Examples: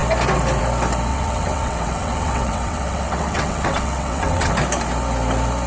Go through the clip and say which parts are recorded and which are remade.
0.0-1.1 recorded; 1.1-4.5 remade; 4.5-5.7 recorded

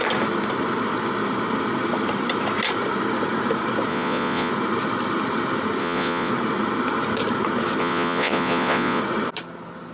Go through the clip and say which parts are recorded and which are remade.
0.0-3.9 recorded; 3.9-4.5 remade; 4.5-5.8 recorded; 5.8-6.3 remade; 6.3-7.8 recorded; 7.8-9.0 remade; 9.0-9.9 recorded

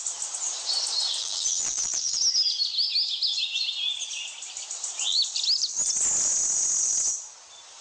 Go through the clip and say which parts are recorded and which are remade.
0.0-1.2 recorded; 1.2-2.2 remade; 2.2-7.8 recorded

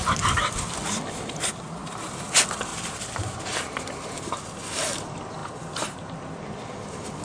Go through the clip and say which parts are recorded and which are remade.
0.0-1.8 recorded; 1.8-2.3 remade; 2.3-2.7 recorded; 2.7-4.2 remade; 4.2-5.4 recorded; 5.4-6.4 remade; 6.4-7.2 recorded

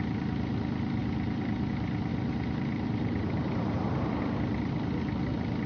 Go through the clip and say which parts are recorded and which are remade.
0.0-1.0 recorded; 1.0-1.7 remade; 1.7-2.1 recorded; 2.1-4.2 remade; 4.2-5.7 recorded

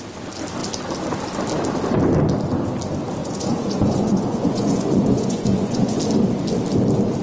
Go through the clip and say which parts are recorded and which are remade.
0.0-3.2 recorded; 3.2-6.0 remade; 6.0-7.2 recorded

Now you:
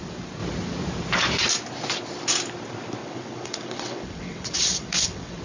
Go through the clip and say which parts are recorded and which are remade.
0.0-3.0 recorded; 3.0-5.4 remade